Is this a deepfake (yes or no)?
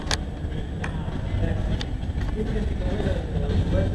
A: no